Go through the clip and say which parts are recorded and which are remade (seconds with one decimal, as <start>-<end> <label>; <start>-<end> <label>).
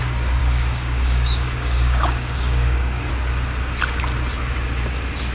0.0-0.4 recorded; 0.4-3.1 remade; 3.1-5.3 recorded